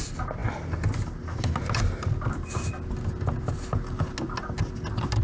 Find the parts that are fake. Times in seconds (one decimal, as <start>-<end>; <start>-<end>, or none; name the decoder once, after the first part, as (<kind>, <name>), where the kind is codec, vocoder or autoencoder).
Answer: none